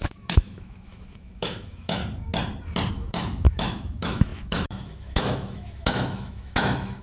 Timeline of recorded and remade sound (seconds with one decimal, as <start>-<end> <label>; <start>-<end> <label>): 0.0-2.0 remade; 2.0-2.9 recorded; 2.9-7.0 remade